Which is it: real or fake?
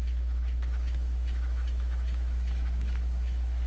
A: fake